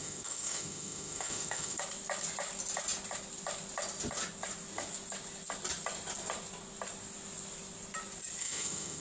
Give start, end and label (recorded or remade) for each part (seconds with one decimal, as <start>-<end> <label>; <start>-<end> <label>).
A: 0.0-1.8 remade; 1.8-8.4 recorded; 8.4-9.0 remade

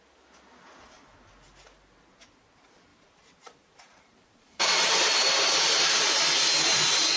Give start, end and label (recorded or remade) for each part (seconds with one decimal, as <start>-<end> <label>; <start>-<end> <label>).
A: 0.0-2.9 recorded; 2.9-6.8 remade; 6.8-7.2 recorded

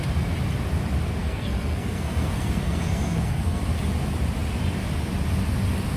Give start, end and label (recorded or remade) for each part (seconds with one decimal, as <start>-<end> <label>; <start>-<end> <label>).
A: 0.0-1.2 recorded; 1.2-3.6 remade; 3.6-6.0 recorded

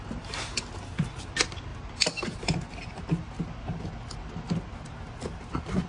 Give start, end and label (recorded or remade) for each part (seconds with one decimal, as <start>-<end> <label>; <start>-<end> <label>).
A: 0.0-5.9 recorded

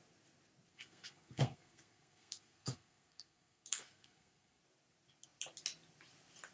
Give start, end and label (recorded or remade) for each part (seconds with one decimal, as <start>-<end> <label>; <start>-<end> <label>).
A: 0.0-0.7 recorded; 0.7-4.6 remade; 4.6-6.5 recorded

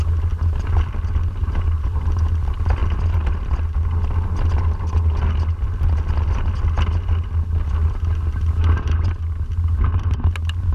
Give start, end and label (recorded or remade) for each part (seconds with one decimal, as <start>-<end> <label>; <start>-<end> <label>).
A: 0.0-1.4 recorded; 1.4-2.0 remade; 2.0-10.7 recorded

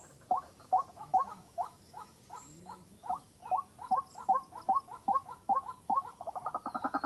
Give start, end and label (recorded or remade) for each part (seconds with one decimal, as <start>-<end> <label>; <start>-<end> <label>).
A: 0.0-3.4 remade; 3.4-4.8 recorded; 4.8-6.4 remade; 6.4-7.1 recorded

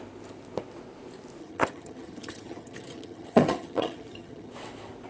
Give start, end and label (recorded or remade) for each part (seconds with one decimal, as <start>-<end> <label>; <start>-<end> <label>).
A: 0.0-1.4 recorded; 1.4-4.5 remade; 4.5-5.1 recorded